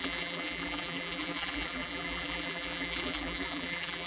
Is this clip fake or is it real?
fake